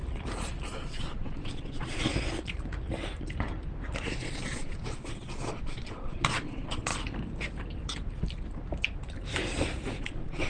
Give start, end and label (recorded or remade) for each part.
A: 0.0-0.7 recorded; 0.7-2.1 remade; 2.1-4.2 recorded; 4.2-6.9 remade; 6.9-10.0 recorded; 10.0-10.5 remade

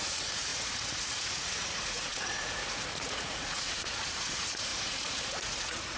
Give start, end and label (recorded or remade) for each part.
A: 0.0-6.0 remade